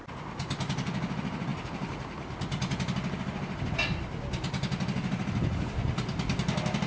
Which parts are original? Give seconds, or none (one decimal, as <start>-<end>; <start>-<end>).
0.0-6.9